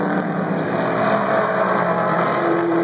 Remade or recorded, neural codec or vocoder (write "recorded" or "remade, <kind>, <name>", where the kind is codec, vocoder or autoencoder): remade, vocoder, BigVGAN v2